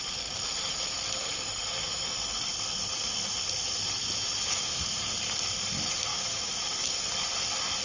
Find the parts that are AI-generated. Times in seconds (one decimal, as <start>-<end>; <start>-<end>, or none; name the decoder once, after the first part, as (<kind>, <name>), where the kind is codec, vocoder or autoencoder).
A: 4.0-4.8 (autoencoder, DAC-VAE); 6.1-7.0